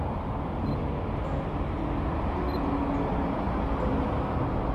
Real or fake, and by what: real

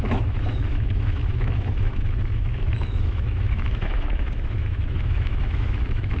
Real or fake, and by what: fake, autoencoder, DAC-VAE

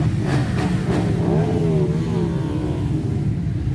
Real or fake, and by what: real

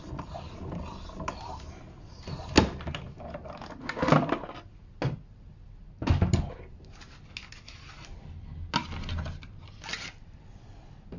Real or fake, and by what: real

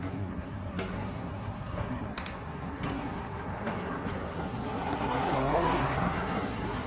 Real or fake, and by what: fake, codec, SNAC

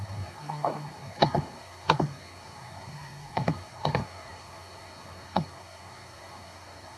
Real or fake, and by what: fake, codec, SNAC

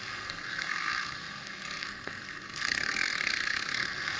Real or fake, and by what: fake, codec, SNAC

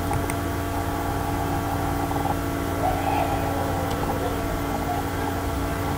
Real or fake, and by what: real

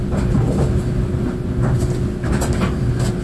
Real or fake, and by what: real